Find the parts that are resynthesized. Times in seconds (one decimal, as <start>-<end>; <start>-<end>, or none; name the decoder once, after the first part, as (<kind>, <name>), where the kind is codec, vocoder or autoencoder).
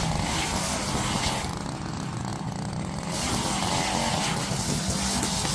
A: none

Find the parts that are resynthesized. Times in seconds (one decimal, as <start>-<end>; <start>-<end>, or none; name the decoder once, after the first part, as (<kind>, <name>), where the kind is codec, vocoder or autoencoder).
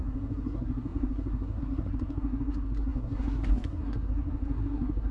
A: 0.0-5.1 (codec, SNAC)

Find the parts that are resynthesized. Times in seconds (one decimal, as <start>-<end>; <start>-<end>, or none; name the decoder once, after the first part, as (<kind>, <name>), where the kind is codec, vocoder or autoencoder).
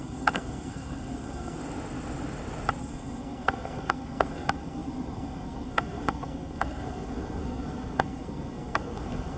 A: 0.0-1.6 (codec, SNAC); 2.8-9.4